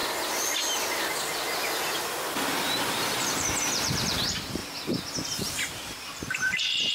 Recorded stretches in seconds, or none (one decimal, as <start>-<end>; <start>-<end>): 0.0-2.6; 4.6-5.4